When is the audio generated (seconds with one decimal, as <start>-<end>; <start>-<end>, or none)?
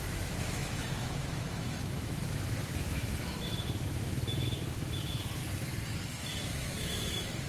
0.0-5.4; 6.1-7.5